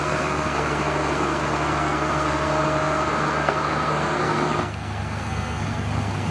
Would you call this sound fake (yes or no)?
yes